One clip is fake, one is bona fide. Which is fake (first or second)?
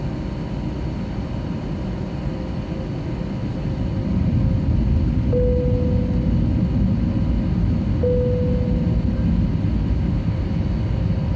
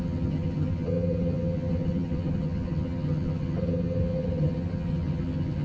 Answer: second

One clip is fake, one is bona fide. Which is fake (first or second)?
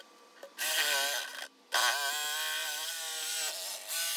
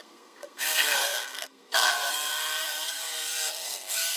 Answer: second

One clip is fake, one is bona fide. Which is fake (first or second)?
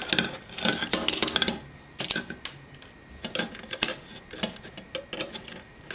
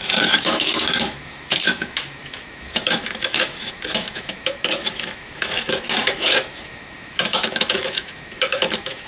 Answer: second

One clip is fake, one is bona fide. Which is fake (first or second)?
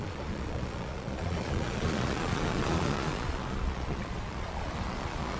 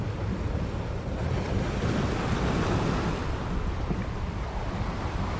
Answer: first